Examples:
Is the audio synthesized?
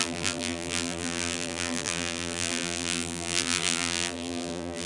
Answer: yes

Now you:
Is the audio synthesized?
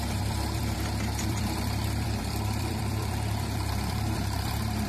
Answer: yes